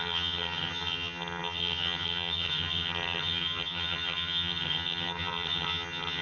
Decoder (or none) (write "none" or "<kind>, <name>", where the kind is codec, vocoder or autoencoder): vocoder, HiFi-GAN